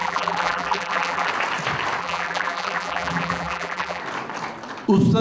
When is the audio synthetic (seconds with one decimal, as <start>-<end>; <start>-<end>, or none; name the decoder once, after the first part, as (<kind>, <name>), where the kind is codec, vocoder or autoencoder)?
0.0-1.3 (vocoder, BigVGAN v2); 2.0-4.0